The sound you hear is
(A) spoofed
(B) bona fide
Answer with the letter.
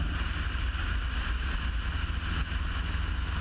B